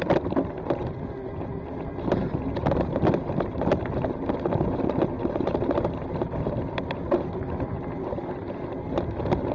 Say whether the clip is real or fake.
real